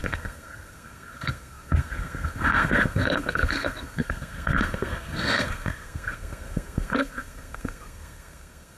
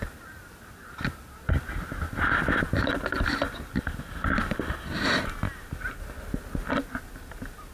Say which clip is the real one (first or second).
second